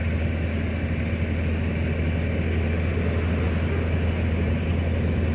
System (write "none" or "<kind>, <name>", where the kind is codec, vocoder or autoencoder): none